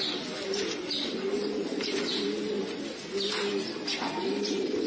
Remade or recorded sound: recorded